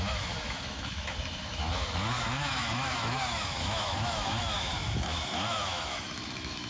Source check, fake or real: fake